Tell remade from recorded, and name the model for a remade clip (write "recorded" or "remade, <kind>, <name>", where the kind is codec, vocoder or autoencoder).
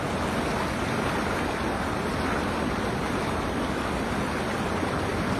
recorded